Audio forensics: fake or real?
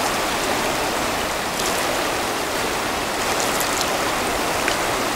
real